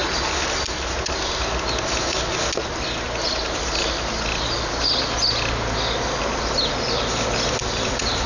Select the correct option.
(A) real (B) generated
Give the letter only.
A